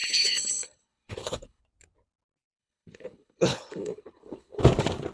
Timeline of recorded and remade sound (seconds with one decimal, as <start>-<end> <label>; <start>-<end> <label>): 0.0-1.6 remade; 1.6-2.6 recorded; 2.6-4.6 remade; 4.6-5.1 recorded